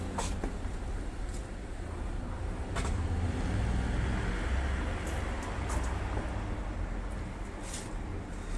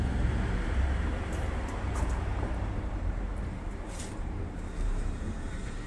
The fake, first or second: second